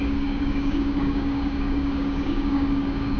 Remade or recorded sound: remade